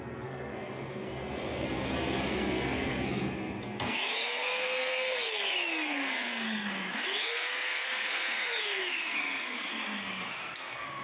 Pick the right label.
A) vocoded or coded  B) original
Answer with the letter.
A